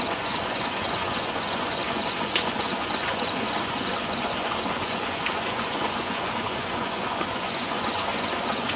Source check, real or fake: fake